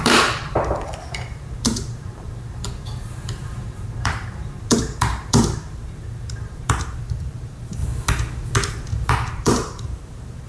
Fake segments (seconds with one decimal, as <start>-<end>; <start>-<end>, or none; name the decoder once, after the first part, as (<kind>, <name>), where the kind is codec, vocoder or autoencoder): 0.0-7.8 (vocoder, BigVGAN v2); 9.1-10.5